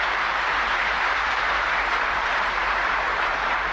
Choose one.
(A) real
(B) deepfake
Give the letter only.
B